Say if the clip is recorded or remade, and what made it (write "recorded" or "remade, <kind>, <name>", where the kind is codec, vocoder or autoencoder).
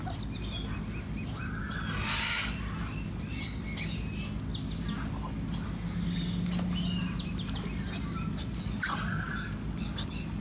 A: recorded